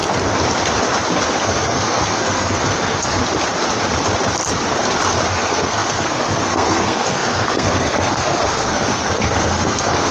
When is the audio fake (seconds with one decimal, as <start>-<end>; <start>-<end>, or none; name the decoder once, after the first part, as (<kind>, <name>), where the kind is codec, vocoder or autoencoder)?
1.4-3.2 (codec, SNAC); 5.3-10.1